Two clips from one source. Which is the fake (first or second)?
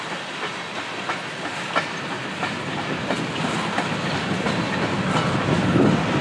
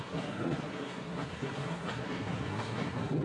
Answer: second